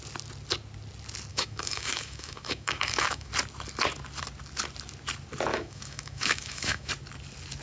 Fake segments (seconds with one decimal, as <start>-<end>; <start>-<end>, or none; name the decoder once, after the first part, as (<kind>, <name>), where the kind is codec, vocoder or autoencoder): 1.3-3.3 (autoencoder, DAC-VAE); 5.5-6.9

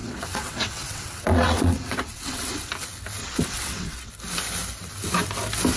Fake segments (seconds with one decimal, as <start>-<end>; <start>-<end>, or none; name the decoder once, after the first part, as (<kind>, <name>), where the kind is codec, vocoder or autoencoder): 0.0-2.7 (vocoder, WaveNeXt); 3.2-4.1

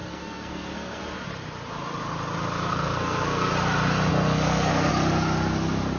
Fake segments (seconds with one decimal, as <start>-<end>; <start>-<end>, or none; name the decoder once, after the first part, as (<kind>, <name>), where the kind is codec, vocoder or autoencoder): 0.0-1.0 (codec, SNAC); 2.7-3.5; 4.1-4.9

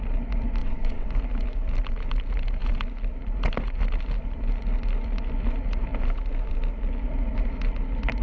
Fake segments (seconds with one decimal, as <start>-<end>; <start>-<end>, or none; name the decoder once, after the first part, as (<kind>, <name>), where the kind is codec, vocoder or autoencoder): 0.6-1.1 (vocoder, WaveNeXt)